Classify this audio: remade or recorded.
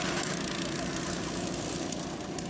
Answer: recorded